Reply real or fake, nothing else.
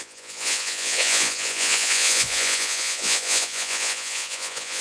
fake